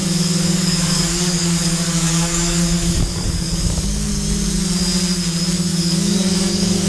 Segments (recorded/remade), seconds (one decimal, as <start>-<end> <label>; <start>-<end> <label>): 0.0-4.1 remade; 4.1-5.7 recorded; 5.7-6.9 remade